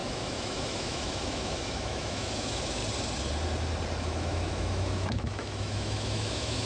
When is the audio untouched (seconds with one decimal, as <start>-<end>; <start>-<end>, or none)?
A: 2.8-4.0